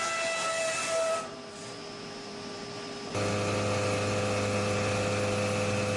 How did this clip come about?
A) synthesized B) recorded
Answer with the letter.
B